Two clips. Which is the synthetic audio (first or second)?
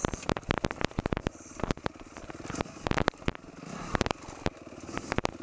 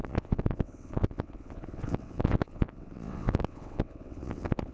second